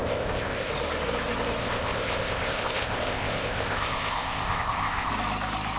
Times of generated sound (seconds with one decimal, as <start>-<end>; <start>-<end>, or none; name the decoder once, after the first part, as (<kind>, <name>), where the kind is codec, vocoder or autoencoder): 0.0-0.7 (codec, ZipCodec); 1.6-5.1